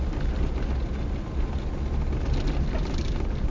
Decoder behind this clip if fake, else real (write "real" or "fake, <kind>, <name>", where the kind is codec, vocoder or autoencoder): real